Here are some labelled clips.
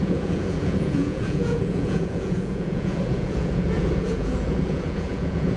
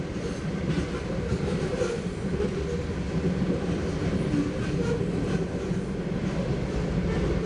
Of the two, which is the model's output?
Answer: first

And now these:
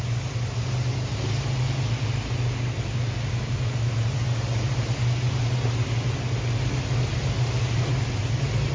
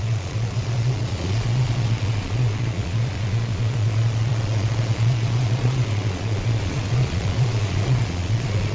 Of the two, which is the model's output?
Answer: second